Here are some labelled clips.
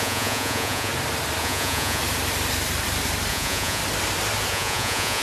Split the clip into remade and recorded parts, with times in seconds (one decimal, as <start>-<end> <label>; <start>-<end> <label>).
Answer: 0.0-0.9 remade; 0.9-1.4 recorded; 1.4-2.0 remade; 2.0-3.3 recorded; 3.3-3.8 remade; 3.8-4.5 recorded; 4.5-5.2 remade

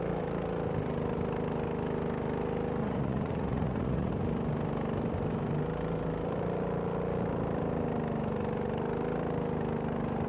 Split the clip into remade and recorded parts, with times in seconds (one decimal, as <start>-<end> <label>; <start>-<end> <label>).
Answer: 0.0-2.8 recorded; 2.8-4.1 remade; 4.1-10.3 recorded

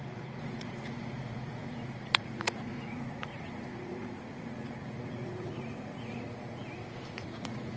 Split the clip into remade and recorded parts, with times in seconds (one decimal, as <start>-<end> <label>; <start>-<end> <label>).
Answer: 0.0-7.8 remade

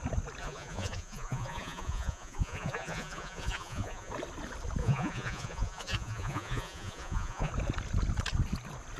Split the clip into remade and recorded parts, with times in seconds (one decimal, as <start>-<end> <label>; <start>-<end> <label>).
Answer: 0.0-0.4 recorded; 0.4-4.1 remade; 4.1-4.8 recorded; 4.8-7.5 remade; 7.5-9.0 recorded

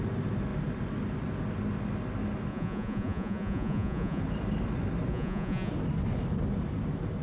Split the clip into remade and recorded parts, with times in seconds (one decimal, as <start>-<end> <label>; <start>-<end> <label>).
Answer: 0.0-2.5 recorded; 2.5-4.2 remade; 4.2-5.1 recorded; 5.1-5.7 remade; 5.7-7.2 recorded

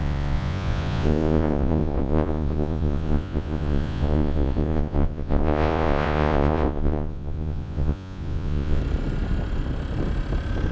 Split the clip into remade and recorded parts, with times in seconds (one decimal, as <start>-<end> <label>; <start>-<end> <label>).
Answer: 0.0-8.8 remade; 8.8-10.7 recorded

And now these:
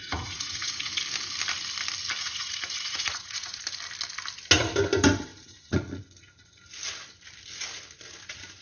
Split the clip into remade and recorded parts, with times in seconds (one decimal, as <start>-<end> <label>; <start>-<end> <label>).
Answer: 0.0-0.9 remade; 0.9-2.2 recorded; 2.2-3.6 remade; 3.6-5.3 recorded; 5.3-6.6 remade; 6.6-8.6 recorded